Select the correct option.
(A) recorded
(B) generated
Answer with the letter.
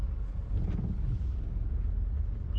A